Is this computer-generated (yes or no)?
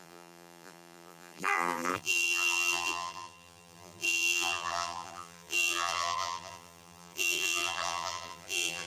yes